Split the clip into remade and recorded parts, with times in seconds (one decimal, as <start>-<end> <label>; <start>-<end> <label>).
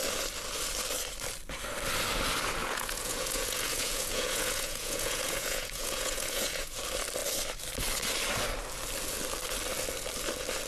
0.0-2.6 recorded; 2.6-6.8 remade; 6.8-10.7 recorded